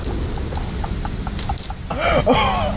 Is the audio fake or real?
real